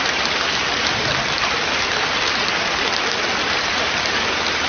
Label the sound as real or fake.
fake